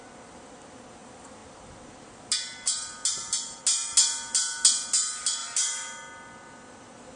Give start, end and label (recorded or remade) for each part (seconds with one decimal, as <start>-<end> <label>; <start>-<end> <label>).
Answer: 0.0-7.2 recorded